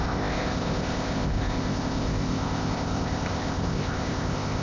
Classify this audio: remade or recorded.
remade